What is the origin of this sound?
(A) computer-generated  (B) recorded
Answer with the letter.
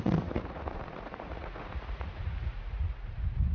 A